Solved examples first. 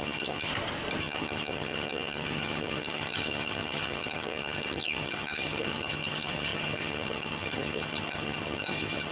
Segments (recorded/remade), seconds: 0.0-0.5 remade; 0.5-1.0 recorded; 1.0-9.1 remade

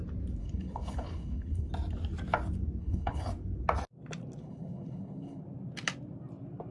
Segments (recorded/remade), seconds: 0.0-0.4 recorded; 0.4-1.7 remade; 1.7-2.8 recorded; 2.8-3.3 remade; 3.3-4.4 recorded; 4.4-5.4 remade; 5.4-6.7 recorded

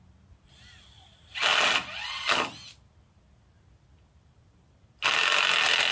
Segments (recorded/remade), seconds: 0.0-5.9 recorded

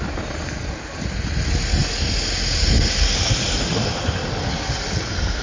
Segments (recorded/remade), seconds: 0.0-5.4 recorded

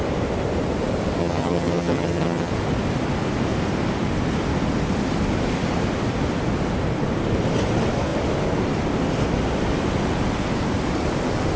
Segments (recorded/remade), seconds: 0.0-1.2 recorded; 1.2-2.5 remade; 2.5-11.6 recorded